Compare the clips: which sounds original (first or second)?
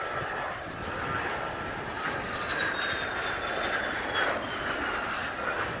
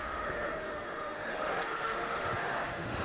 first